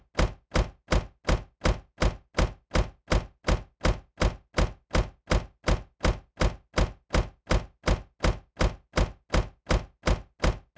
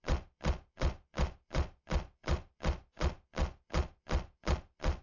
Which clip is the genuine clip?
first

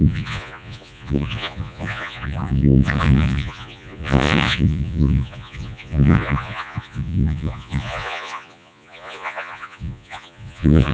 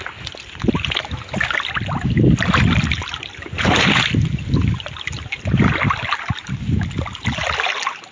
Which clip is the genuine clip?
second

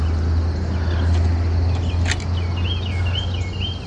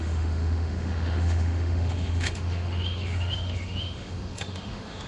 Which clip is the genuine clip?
first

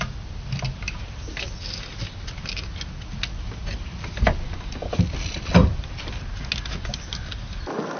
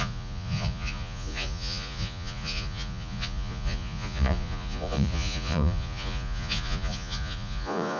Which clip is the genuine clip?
first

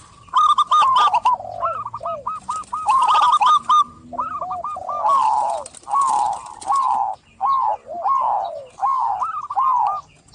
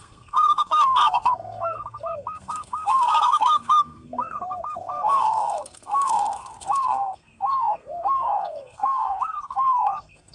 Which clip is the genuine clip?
first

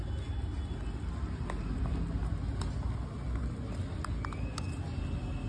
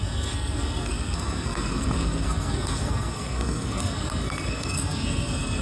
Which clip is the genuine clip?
first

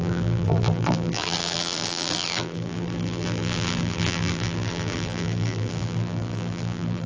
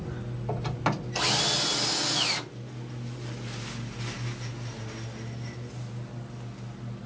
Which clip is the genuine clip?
second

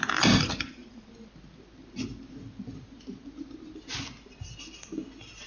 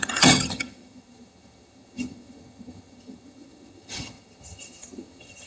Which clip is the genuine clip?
first